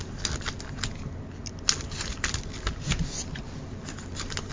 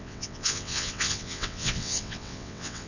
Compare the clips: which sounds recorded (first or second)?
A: first